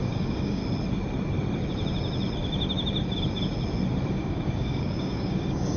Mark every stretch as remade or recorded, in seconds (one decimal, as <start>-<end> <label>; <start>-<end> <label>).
0.0-0.6 remade; 0.6-4.1 recorded; 4.1-5.8 remade